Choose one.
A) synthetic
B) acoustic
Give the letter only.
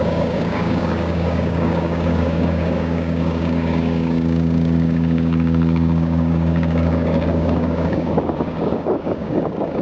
A